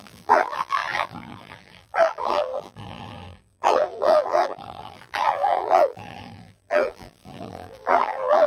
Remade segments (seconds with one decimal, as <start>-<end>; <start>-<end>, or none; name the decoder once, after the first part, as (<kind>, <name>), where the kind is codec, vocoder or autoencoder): 0.0-8.5 (vocoder, BigVGAN v2)